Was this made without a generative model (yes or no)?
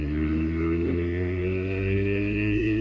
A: no